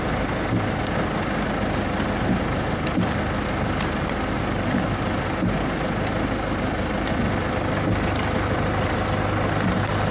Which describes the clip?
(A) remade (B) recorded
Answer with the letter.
B